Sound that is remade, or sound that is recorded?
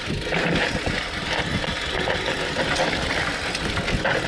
recorded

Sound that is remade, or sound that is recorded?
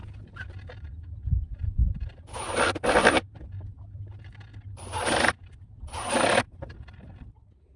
remade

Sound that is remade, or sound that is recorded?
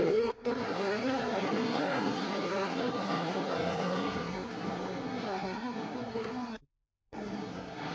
remade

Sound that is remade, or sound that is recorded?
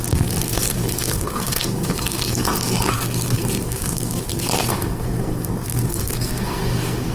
remade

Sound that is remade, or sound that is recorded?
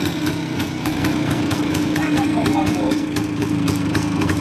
remade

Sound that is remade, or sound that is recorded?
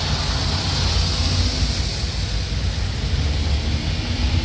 recorded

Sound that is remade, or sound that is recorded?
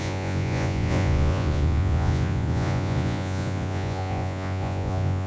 remade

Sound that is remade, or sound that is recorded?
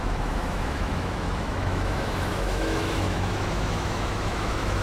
remade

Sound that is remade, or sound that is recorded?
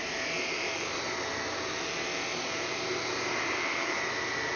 recorded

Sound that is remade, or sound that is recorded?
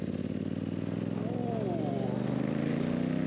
recorded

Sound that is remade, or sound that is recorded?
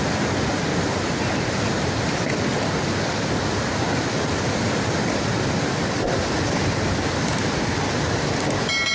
recorded